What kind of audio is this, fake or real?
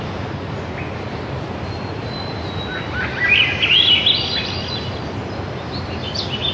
real